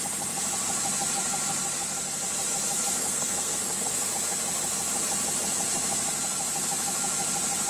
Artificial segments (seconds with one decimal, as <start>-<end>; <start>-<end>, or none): 3.0-4.1